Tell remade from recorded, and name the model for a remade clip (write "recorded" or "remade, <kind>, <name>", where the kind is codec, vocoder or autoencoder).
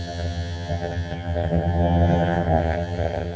remade, vocoder, HiFi-GAN